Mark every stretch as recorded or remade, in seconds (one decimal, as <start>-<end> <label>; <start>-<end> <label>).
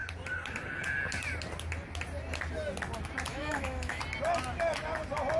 0.0-3.3 recorded; 3.3-4.0 remade; 4.0-5.4 recorded